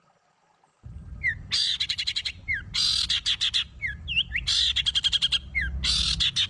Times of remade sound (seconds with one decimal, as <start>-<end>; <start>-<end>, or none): none